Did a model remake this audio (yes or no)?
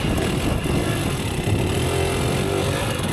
no